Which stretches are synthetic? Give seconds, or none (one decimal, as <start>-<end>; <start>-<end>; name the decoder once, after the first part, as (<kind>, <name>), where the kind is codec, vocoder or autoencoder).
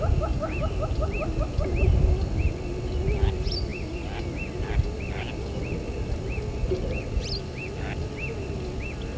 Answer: none